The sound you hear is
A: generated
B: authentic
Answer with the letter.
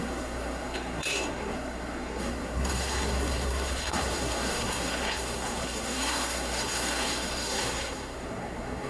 A